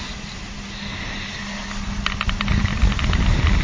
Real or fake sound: real